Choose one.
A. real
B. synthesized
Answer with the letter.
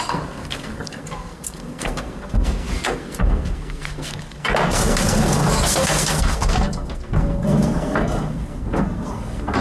B